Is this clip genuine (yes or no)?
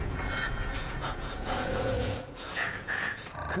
no